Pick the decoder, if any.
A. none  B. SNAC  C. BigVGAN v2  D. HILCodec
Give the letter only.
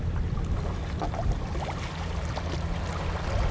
A